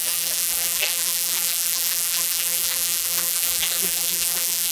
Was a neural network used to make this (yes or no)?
yes